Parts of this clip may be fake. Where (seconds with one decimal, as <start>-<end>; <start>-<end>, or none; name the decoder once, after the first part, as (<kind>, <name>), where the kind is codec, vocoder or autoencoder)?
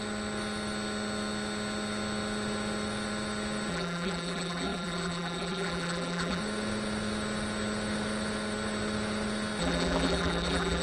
3.7-6.4 (vocoder, BigVGAN v2); 9.6-10.8